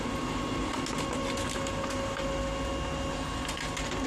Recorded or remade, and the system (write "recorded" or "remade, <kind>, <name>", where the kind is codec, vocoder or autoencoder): recorded